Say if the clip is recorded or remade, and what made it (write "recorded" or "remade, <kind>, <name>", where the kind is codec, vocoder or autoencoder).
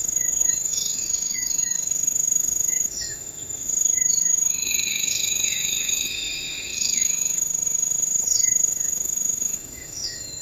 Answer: remade, autoencoder, DAC-VAE